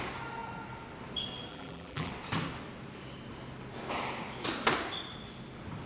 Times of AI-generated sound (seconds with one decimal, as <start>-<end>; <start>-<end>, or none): 1.5-2.1

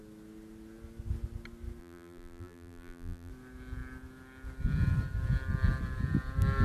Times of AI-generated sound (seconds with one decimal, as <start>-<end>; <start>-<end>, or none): 1.8-3.3

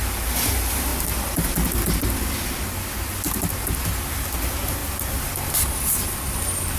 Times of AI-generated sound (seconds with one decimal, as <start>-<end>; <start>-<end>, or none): none

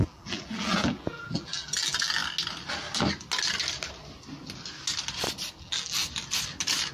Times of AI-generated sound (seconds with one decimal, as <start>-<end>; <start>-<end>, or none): 0.0-2.2; 5.6-6.0

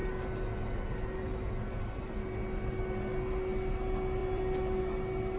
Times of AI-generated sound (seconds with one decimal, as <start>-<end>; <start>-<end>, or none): 4.2-4.8